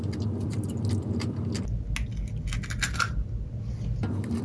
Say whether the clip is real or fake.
real